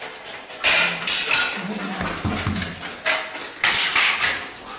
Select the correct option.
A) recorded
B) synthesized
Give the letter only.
A